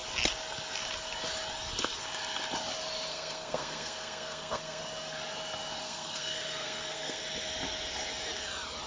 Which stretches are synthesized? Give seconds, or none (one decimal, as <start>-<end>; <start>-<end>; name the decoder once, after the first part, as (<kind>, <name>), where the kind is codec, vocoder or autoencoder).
3.1-4.8 (codec, SNAC); 5.8-7.2

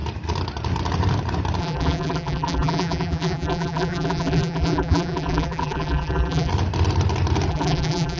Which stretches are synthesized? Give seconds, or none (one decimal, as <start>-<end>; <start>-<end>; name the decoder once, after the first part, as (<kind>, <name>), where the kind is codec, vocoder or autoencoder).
1.6-6.5 (vocoder, BigVGAN v2); 7.5-8.2